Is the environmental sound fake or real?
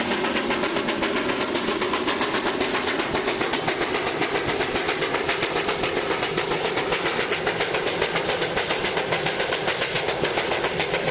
real